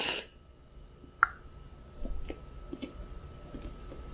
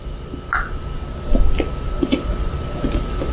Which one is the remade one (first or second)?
second